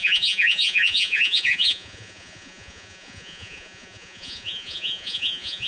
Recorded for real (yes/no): no